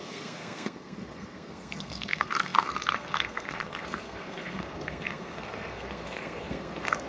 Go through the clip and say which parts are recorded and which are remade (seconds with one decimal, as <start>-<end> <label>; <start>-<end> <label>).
0.0-7.1 remade